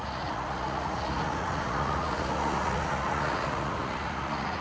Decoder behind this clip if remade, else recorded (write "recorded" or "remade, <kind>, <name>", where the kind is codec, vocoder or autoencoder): remade, vocoder, Vocos